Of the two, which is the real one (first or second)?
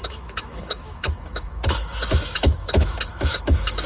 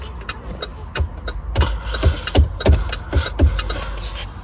second